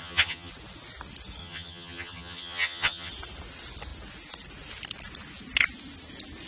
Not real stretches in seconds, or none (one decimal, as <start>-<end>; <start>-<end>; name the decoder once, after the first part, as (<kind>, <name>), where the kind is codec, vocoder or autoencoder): 0.0-0.5 (vocoder, HiFi-GAN); 1.4-3.1